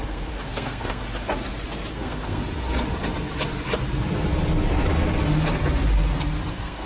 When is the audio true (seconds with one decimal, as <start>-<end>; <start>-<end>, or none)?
1.0-1.9; 2.4-6.5